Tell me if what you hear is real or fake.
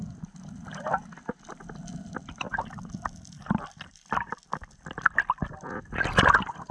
real